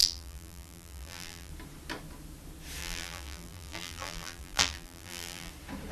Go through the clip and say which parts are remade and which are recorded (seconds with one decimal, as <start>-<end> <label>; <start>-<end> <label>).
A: 0.0-1.5 remade; 1.5-2.8 recorded; 2.8-5.5 remade; 5.5-5.9 recorded